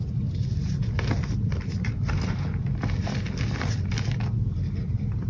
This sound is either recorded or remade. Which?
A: recorded